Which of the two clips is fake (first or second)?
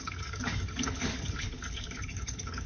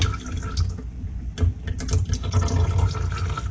first